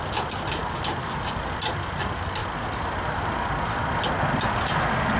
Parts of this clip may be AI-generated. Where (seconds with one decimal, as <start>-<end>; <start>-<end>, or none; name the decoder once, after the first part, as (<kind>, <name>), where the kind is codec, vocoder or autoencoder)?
none